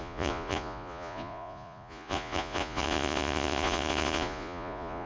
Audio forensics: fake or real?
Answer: fake